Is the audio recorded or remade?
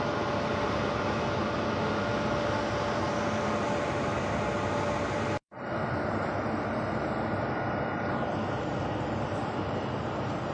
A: recorded